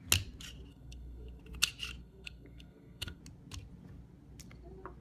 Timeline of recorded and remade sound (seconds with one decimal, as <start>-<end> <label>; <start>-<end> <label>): 0.0-0.7 recorded; 0.7-1.4 remade; 1.4-2.0 recorded; 2.0-3.2 remade; 3.2-5.0 recorded